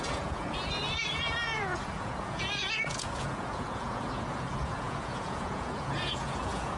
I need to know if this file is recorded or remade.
remade